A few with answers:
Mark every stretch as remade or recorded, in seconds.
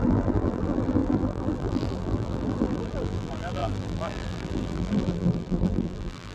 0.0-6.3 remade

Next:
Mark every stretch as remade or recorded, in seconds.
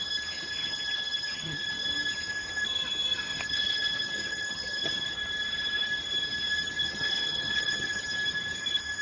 0.0-0.6 recorded; 0.6-1.7 remade; 1.7-3.3 recorded; 3.3-5.1 remade; 5.1-6.8 recorded; 6.8-8.0 remade; 8.0-9.0 recorded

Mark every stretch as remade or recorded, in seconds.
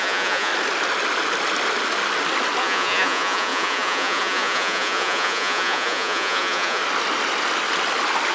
0.0-0.5 remade; 0.5-2.6 recorded; 2.6-6.8 remade; 6.8-8.3 recorded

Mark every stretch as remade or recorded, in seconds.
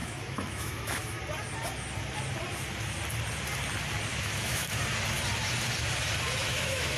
0.0-1.2 remade; 1.2-4.1 recorded; 4.1-4.8 remade; 4.8-6.4 recorded; 6.4-7.0 remade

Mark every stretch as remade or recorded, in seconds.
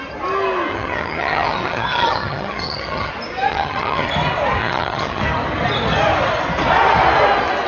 0.0-0.7 recorded; 0.7-3.1 remade; 3.1-3.5 recorded; 3.5-4.1 remade; 4.1-4.6 recorded; 4.6-5.2 remade; 5.2-7.7 recorded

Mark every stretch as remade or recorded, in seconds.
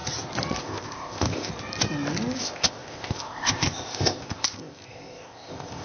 0.0-0.6 recorded; 0.6-1.5 remade; 1.5-2.4 recorded; 2.4-5.8 remade